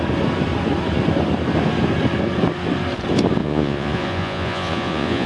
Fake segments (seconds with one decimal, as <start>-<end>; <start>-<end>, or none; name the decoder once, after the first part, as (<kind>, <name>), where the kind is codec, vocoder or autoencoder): 3.4-5.3 (vocoder, Vocos)